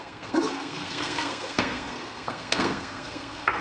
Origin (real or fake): fake